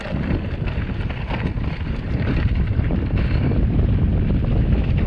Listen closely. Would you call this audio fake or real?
real